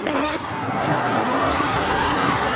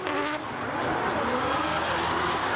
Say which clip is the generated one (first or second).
first